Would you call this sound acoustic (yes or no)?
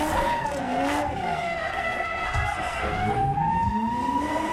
no